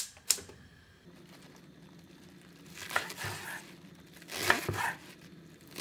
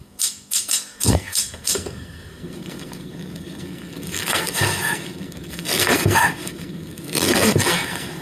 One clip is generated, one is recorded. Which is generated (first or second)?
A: second